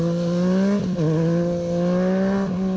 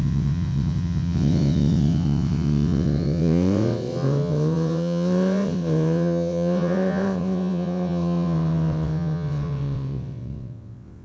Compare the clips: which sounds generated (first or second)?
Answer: second